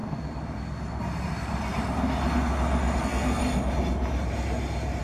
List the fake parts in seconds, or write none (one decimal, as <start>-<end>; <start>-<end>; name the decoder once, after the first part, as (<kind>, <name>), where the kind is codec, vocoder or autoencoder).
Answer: 3.0-3.4 (codec, SNAC)